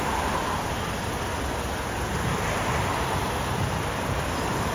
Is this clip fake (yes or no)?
no